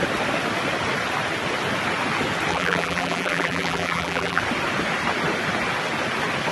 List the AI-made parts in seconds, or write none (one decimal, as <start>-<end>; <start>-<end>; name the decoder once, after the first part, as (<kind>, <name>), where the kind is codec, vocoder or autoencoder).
2.5-4.4 (vocoder, BigVGAN v2)